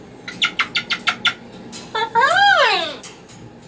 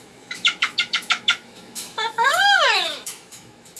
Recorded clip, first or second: first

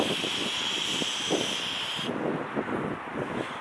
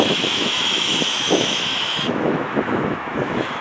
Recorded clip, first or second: first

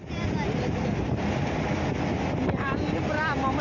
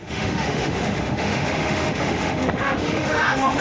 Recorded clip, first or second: first